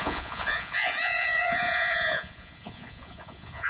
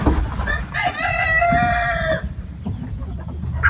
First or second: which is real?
second